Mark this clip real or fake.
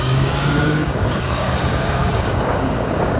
fake